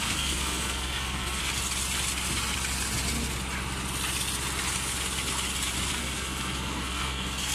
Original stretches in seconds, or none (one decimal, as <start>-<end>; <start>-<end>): 1.4-5.9